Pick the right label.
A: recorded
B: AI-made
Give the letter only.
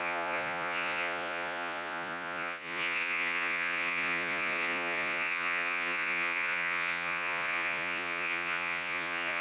B